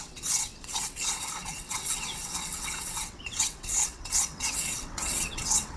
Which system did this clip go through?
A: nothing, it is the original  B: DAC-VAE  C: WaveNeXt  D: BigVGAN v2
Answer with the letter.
C